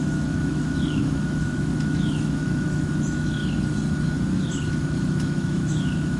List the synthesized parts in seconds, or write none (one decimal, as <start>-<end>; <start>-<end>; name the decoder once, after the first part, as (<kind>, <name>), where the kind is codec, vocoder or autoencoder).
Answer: 0.0-3.4 (autoencoder, DAC-VAE); 4.7-6.2